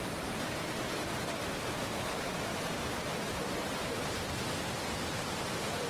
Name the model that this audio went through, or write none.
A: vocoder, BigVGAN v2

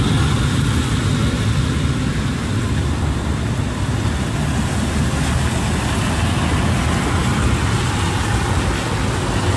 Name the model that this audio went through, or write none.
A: none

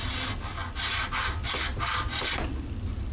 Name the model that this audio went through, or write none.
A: none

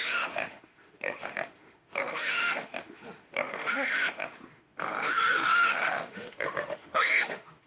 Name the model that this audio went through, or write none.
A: autoencoder, DAC-VAE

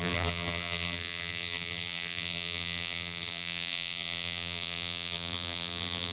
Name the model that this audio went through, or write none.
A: vocoder, BigVGAN v2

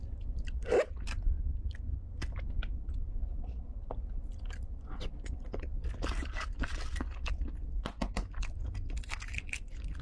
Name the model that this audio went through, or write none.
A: none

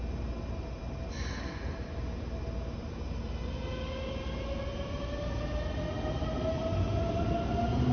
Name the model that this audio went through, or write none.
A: none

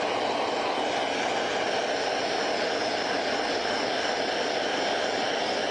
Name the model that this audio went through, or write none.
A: none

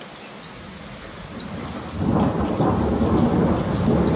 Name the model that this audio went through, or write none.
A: none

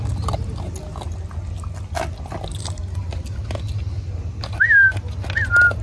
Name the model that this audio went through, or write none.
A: none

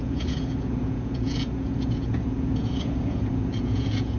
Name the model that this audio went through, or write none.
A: vocoder, Vocos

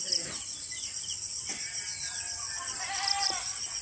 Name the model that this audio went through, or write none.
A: vocoder, BigVGAN v2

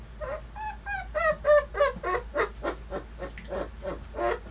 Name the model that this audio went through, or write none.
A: none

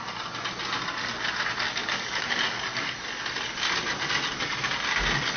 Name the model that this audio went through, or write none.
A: none